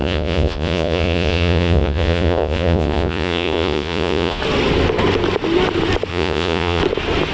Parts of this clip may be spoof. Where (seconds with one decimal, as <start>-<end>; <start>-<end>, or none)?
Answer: 0.0-4.4; 6.1-6.8